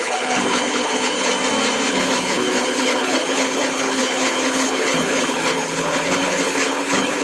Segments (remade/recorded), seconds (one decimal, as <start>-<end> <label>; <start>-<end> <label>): 0.0-1.3 remade; 1.3-1.9 recorded; 1.9-7.2 remade